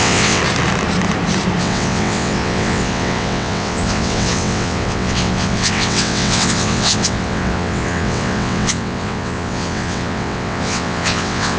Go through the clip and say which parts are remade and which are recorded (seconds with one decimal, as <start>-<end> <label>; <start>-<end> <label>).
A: 0.0-0.4 remade; 0.4-1.6 recorded; 1.6-11.6 remade